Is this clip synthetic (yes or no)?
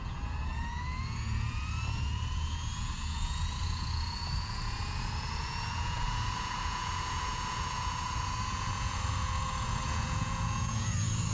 yes